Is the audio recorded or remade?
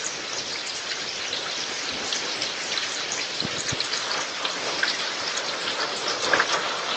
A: recorded